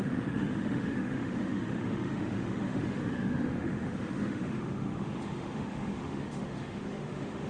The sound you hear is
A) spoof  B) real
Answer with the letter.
A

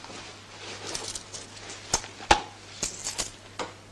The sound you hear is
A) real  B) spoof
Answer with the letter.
A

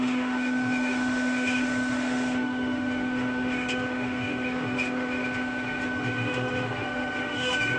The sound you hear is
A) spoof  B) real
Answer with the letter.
A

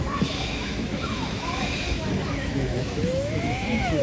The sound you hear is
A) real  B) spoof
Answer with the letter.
B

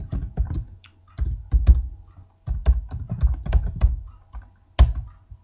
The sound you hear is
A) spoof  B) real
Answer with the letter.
B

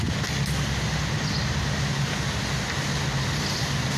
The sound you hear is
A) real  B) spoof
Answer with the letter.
A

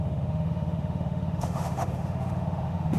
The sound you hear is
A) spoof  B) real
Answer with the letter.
A